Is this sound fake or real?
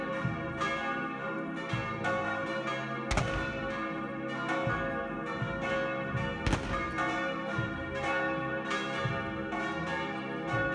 real